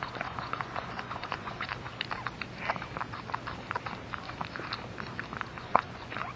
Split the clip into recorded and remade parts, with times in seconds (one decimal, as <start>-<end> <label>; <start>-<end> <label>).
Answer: 0.0-1.7 remade; 1.7-5.5 recorded; 5.5-6.4 remade